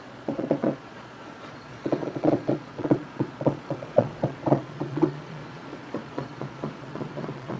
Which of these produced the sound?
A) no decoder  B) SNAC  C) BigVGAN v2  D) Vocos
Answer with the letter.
D